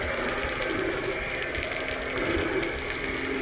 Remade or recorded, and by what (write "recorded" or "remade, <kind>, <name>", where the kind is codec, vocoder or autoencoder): recorded